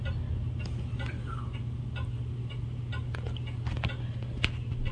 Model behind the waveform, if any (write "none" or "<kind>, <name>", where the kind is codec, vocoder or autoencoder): none